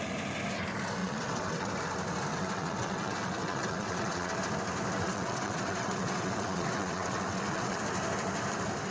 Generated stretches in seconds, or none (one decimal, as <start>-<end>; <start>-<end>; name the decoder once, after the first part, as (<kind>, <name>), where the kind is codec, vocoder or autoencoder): 1.0-1.7 (vocoder, WaveNeXt); 2.3-4.4; 5.0-7.8